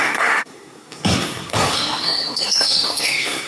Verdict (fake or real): fake